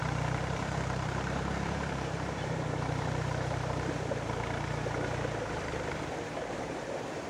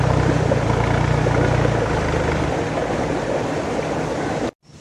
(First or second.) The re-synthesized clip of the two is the first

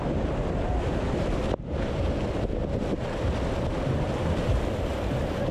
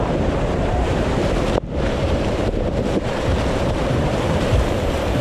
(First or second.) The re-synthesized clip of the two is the second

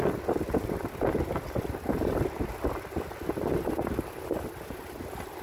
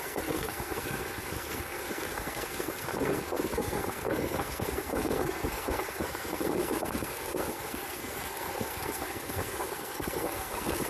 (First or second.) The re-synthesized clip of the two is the second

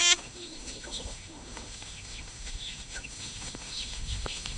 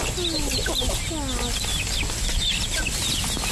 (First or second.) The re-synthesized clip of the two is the first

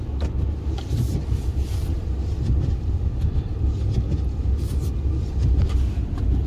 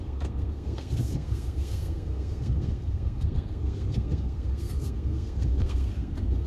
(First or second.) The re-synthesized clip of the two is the second